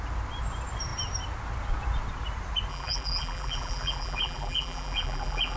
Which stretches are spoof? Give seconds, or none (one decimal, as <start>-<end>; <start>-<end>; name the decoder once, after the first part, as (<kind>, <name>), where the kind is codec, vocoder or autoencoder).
2.7-5.6 (vocoder, BigVGAN v2)